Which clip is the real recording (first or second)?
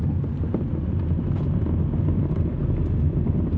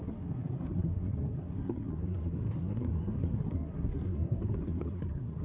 first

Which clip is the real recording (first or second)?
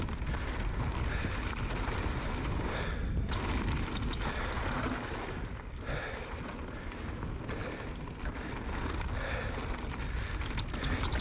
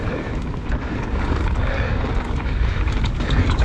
first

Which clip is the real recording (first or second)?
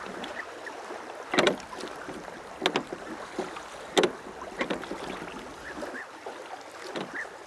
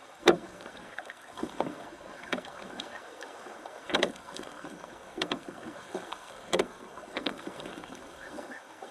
first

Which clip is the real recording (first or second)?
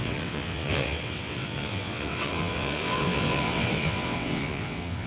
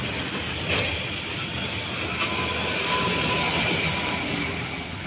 second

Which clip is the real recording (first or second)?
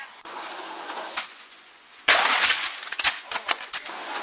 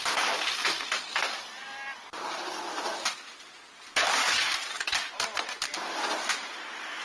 second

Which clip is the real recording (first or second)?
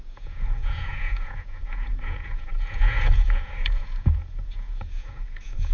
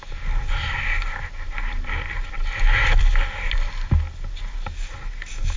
second